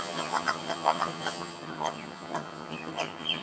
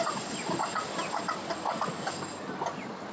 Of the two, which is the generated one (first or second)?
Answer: first